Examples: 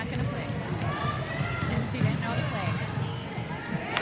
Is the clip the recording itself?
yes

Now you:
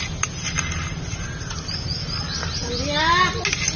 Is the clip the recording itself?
yes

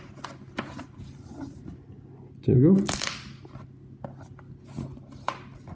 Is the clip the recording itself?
yes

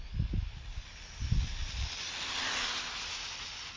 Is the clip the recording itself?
yes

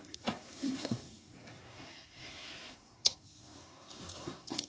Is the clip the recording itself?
no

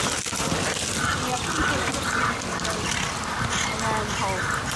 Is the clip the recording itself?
yes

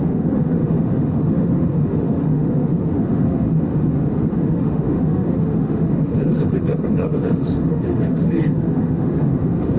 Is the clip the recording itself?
no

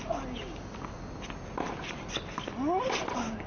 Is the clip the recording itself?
yes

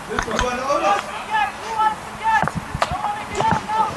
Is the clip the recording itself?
yes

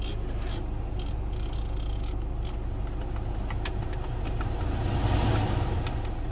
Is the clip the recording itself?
yes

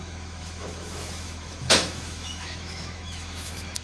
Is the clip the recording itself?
no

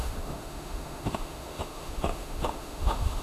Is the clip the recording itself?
no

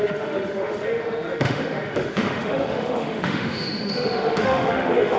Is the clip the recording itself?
no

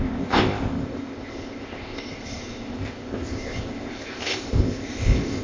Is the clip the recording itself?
no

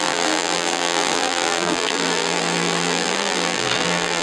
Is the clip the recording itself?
no